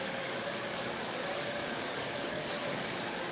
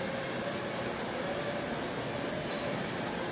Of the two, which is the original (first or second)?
second